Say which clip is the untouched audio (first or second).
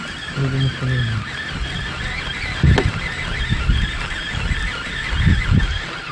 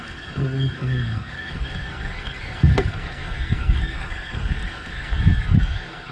first